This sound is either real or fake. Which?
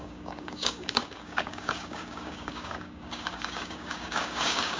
fake